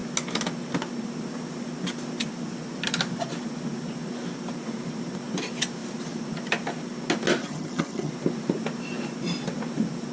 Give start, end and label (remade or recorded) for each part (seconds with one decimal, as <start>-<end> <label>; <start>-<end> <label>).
0.0-7.4 recorded; 7.4-8.1 remade; 8.1-10.1 recorded